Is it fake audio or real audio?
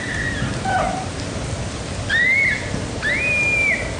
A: real